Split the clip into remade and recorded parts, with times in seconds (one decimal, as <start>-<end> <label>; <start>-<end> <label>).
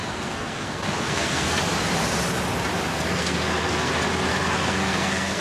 0.0-1.6 remade; 1.6-2.9 recorded; 2.9-3.9 remade; 3.9-4.3 recorded; 4.3-5.4 remade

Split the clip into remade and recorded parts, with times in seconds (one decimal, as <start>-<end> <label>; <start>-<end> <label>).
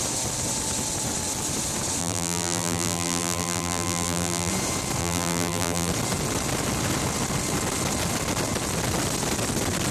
0.0-2.0 recorded; 2.0-4.5 remade; 4.5-5.0 recorded; 5.0-5.9 remade; 5.9-9.9 recorded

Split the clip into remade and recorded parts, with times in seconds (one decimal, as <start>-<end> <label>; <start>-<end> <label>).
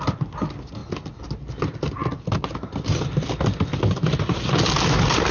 0.0-5.3 recorded